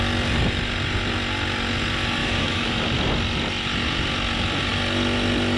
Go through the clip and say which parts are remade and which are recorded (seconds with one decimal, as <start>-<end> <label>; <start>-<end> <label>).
0.0-2.2 recorded; 2.2-2.8 remade; 2.8-5.6 recorded